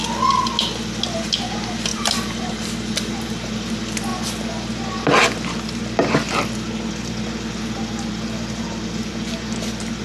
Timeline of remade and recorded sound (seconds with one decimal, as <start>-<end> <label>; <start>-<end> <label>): 0.0-1.9 recorded; 1.9-3.5 remade; 3.5-10.0 recorded